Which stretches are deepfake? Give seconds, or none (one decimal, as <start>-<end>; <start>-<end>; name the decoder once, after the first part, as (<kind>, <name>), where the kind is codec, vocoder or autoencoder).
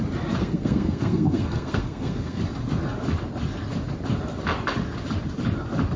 0.4-2.4 (codec, SNAC)